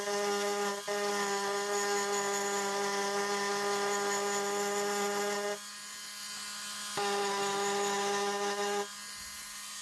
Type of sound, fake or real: real